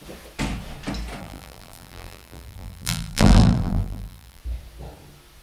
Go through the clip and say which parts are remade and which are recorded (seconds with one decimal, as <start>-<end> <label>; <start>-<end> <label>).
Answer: 0.0-1.2 recorded; 1.2-4.4 remade; 4.4-5.4 recorded